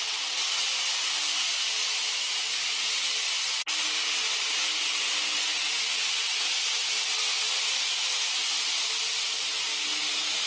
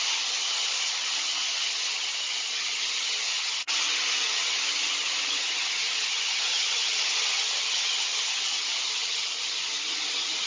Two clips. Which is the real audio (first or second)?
first